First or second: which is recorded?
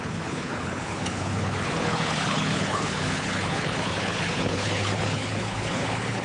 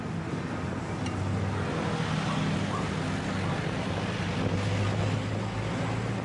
second